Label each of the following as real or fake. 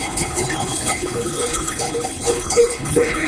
fake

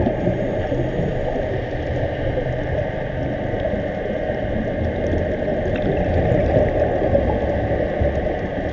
real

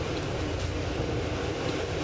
fake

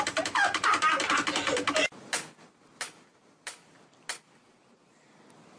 real